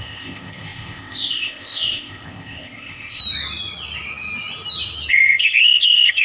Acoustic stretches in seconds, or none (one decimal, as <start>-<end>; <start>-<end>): 3.2-5.1